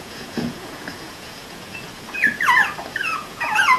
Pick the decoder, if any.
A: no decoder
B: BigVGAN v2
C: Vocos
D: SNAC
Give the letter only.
C